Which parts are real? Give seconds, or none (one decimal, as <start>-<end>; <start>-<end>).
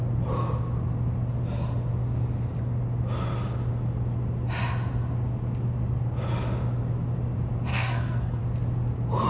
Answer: 0.0-7.7; 8.4-9.3